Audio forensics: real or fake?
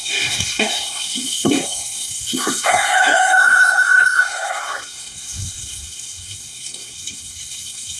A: fake